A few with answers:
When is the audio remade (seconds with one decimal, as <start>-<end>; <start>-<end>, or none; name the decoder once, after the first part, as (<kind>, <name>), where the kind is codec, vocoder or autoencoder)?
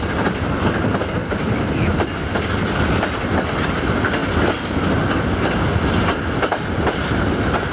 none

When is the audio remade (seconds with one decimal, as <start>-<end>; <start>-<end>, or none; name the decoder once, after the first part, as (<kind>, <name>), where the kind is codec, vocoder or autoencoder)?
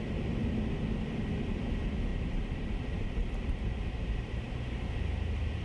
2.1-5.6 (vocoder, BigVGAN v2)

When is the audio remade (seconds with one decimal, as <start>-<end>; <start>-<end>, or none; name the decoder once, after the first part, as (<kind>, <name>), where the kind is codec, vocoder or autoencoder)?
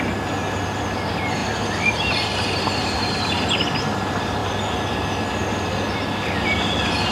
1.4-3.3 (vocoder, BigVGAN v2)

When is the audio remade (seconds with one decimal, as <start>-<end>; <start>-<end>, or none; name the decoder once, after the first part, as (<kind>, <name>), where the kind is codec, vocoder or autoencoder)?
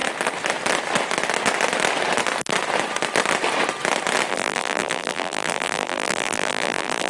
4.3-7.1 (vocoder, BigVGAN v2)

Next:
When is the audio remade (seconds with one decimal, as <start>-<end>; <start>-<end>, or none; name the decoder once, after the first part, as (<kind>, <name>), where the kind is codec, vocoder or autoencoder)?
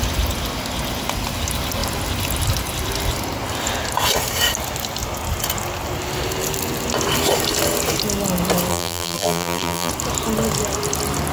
8.7-9.9 (vocoder, BigVGAN v2)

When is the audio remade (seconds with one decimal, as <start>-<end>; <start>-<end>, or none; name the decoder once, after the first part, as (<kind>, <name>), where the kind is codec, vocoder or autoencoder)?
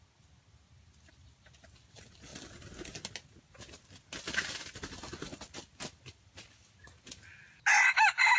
none